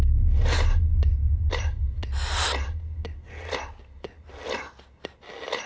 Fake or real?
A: real